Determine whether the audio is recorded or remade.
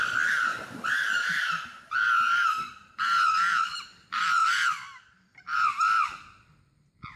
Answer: remade